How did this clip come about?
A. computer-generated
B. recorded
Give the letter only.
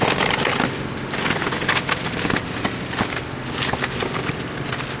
B